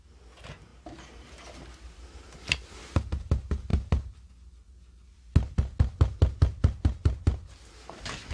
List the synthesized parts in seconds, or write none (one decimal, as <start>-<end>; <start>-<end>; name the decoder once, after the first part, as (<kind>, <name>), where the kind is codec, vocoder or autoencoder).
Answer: none

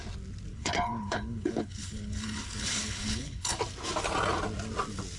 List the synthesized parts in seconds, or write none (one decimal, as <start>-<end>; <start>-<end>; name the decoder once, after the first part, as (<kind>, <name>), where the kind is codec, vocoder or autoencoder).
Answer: 0.5-3.6 (codec, HILCodec)

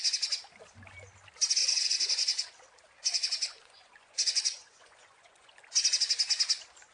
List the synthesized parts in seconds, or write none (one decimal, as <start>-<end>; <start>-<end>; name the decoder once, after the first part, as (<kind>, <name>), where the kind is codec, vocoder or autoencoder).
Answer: 1.6-2.5 (vocoder, Vocos); 3.0-5.5

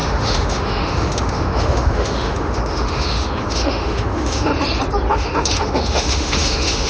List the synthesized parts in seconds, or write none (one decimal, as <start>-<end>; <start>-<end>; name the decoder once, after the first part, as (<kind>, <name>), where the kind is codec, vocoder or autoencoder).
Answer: 0.0-4.5 (autoencoder, DAC-VAE); 5.1-6.9

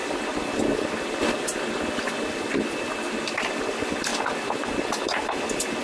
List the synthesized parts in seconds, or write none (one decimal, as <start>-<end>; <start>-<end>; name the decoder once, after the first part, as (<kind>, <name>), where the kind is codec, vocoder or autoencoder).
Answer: 3.2-4.1 (vocoder, BigVGAN v2); 4.8-5.8

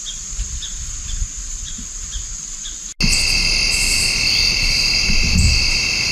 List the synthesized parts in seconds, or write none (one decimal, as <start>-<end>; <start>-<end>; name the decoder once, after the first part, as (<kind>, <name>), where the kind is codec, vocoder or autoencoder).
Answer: none